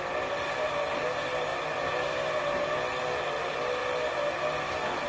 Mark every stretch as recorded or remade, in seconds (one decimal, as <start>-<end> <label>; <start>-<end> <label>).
0.0-5.1 recorded